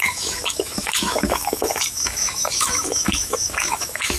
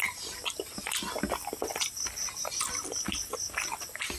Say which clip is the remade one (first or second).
first